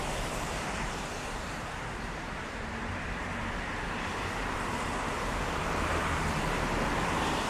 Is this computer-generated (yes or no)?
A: yes